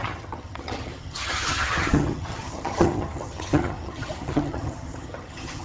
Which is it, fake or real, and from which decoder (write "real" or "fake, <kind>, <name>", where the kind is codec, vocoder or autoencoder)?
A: fake, vocoder, HiFi-GAN